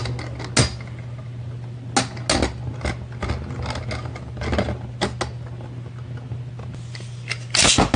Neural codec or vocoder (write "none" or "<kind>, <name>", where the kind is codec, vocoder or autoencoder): none